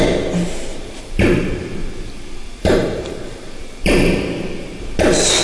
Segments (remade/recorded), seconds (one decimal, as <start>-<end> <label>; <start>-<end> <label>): 0.0-0.7 recorded; 0.7-3.9 remade; 3.9-5.4 recorded